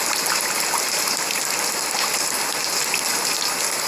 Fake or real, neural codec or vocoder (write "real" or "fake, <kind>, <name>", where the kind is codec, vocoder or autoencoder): real